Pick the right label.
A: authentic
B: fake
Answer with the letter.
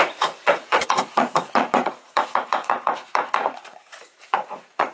B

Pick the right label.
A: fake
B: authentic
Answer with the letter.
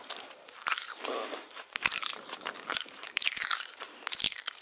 A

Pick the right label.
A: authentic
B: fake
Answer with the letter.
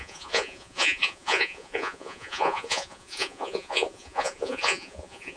B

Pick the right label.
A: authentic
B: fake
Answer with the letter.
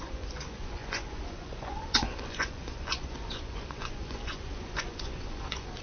B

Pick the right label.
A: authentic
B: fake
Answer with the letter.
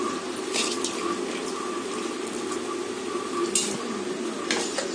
A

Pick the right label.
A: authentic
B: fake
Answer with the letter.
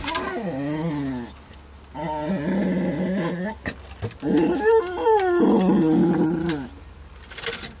A